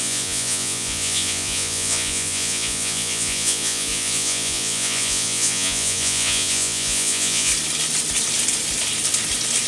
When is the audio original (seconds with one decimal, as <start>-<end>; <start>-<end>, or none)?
7.5-9.7